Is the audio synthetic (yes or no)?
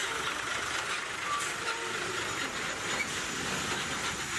yes